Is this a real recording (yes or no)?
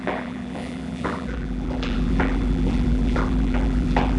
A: no